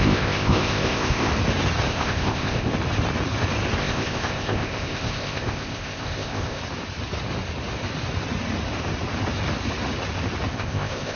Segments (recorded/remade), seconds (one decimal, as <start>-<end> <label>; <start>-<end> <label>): 0.0-1.3 remade; 1.3-1.9 recorded; 1.9-2.7 remade; 2.7-3.8 recorded; 3.8-6.6 remade; 6.6-10.5 recorded; 10.5-11.2 remade